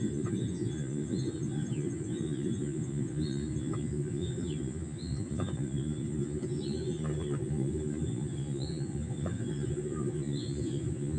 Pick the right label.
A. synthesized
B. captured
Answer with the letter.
A